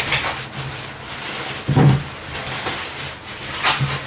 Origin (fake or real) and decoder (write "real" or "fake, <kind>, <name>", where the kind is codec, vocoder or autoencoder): fake, vocoder, BigVGAN v2